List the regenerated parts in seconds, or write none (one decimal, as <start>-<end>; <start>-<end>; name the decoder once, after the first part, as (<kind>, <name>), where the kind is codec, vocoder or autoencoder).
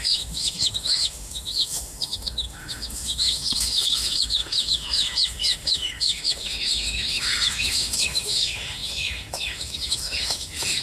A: 0.0-10.8 (autoencoder, DAC-VAE)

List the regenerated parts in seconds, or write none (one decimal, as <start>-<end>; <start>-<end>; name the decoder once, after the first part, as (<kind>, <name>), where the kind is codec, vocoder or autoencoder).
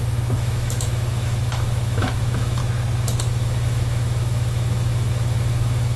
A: 0.0-2.6 (autoencoder, DAC-VAE); 3.2-6.0